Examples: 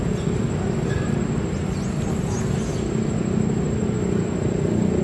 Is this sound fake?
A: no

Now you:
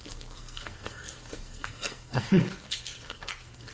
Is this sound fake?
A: yes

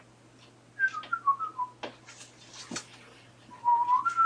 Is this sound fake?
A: no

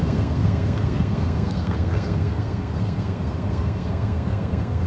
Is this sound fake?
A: yes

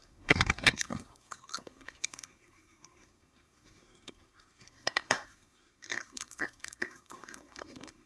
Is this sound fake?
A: yes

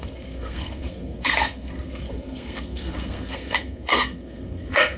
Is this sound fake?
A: yes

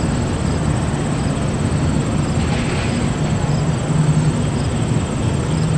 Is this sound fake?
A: no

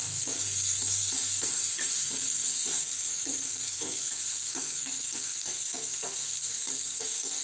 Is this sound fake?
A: yes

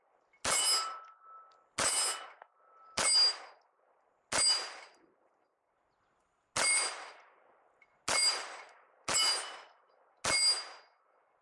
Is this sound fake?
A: no